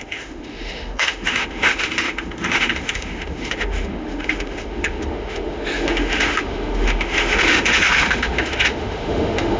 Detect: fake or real fake